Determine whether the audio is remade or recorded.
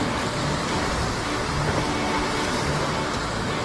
recorded